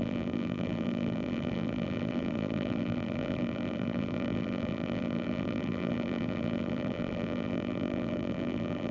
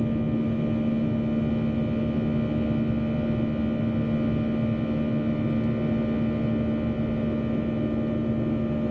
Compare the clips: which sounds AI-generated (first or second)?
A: first